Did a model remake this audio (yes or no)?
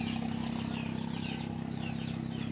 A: no